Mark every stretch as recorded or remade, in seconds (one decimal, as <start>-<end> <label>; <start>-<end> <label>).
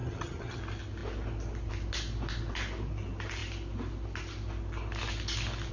0.0-0.6 remade; 0.6-5.7 recorded